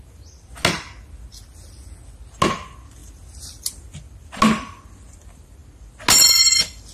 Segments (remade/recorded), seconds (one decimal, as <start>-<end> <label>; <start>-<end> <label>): 0.0-6.9 recorded